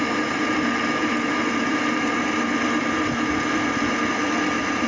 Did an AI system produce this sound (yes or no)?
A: no